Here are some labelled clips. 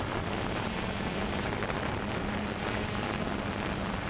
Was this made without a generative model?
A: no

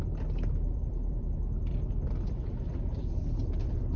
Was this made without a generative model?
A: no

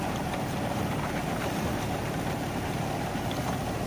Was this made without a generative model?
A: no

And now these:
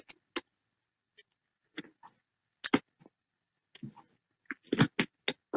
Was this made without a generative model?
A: yes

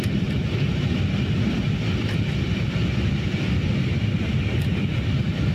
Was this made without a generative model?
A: yes